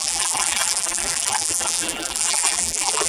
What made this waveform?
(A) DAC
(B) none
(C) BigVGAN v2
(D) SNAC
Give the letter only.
C